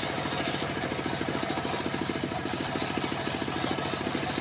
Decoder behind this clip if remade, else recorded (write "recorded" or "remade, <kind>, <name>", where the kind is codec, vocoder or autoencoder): recorded